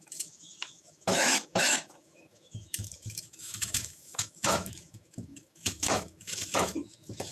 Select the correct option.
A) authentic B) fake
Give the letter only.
B